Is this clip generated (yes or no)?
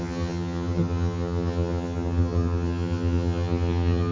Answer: yes